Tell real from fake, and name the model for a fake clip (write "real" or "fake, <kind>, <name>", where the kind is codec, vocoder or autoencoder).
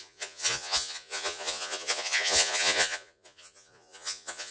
fake, vocoder, Vocos